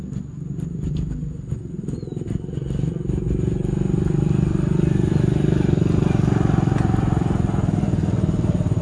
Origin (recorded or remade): recorded